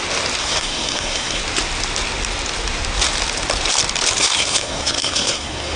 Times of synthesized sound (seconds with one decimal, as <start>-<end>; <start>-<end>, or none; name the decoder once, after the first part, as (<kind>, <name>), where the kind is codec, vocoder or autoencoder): 0.4-1.4 (codec, SNAC); 4.2-5.8